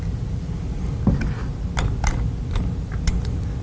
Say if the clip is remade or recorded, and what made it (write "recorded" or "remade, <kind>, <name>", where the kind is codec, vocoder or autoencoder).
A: recorded